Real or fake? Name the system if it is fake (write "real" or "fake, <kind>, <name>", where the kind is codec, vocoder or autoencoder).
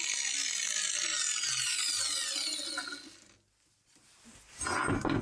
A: real